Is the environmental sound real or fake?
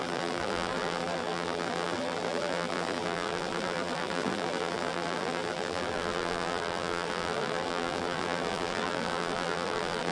fake